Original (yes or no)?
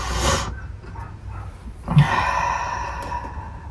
yes